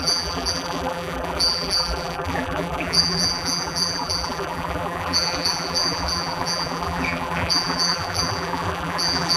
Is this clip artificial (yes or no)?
yes